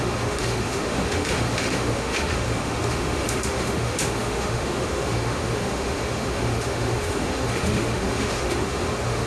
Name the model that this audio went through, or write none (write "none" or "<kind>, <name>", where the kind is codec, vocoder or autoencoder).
autoencoder, DAC-VAE